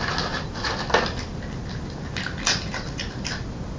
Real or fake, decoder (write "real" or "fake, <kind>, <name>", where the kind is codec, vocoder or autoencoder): real